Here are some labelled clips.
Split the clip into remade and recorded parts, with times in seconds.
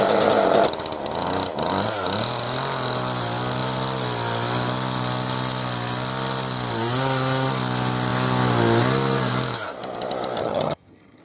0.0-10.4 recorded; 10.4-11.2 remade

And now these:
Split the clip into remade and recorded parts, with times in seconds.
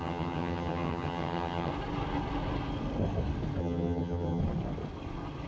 0.0-1.7 remade; 1.7-3.6 recorded; 3.6-4.4 remade; 4.4-5.5 recorded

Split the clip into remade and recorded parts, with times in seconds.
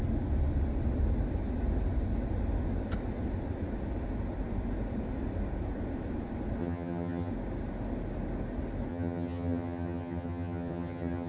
0.0-6.6 recorded; 6.6-7.3 remade; 7.3-8.9 recorded; 8.9-11.3 remade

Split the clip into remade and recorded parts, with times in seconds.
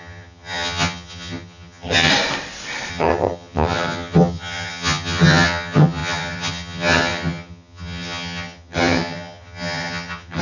0.0-2.1 remade; 2.1-2.9 recorded; 2.9-10.4 remade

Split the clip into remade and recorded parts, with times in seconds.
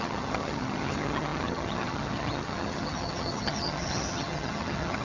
0.0-5.0 remade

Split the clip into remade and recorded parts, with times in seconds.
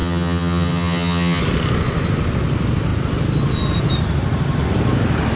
0.0-1.4 remade; 1.4-5.4 recorded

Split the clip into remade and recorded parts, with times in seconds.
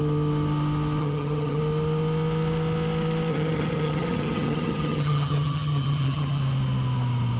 0.0-1.0 recorded; 1.0-1.6 remade; 1.6-3.3 recorded; 3.3-6.4 remade; 6.4-7.4 recorded